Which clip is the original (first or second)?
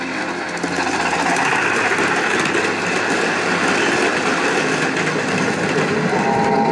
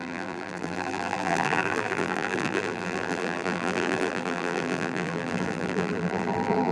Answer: first